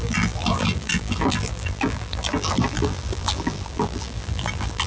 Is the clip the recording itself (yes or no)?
no